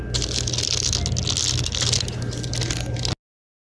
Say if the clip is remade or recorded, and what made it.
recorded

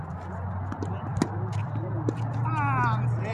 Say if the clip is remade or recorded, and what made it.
recorded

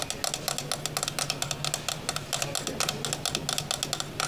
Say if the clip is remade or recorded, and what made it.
recorded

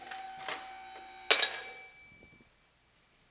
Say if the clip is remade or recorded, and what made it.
recorded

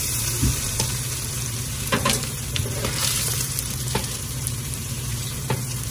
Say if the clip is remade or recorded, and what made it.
remade, vocoder, BigVGAN v2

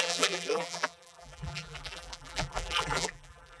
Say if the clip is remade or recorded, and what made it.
remade, vocoder, BigVGAN v2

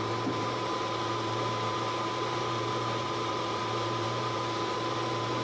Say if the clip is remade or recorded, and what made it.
remade, vocoder, BigVGAN v2